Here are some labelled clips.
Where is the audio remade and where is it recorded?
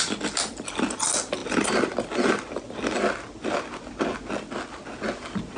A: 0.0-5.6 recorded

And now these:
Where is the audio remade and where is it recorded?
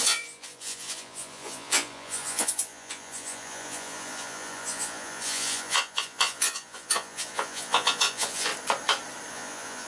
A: 0.0-8.5 remade; 8.5-9.3 recorded; 9.3-9.9 remade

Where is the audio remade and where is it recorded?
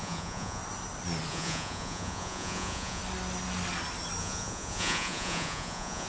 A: 0.0-0.6 remade; 0.6-1.3 recorded; 1.3-3.0 remade; 3.0-4.2 recorded; 4.2-6.1 remade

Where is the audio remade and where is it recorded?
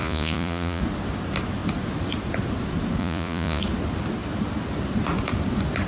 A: 0.0-0.8 remade; 0.8-3.0 recorded; 3.0-3.6 remade; 3.6-5.9 recorded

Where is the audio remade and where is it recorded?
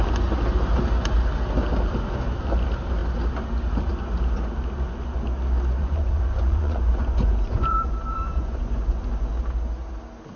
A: 0.0-5.8 recorded; 5.8-9.5 remade; 9.5-10.4 recorded